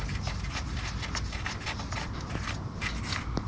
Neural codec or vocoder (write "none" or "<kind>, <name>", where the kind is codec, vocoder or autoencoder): none